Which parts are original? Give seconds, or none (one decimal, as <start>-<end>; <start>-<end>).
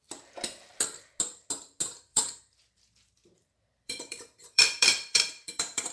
0.0-2.1